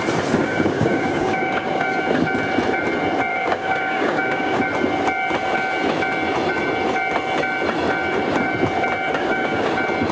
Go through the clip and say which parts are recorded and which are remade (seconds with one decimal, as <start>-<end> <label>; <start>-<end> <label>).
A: 0.0-0.4 recorded; 0.4-2.0 remade; 2.0-3.3 recorded; 3.3-4.6 remade; 4.6-9.1 recorded; 9.1-9.7 remade; 9.7-10.1 recorded